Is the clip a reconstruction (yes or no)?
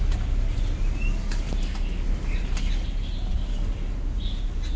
no